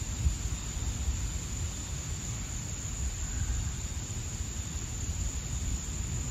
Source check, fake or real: real